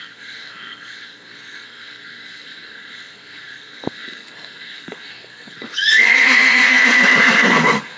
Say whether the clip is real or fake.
fake